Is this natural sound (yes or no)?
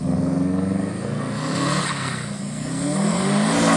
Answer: no